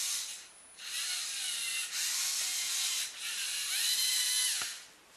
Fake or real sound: real